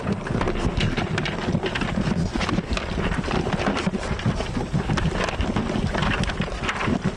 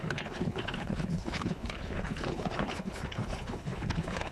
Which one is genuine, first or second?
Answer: first